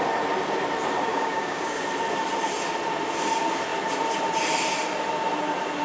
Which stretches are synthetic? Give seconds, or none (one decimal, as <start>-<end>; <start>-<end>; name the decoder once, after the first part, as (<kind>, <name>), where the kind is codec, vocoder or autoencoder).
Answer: 1.1-1.8 (codec, DAC)